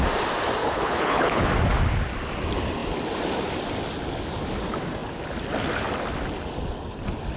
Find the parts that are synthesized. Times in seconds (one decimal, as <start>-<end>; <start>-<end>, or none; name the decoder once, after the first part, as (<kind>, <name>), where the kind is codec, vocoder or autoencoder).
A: 0.6-1.4 (codec, HILCodec)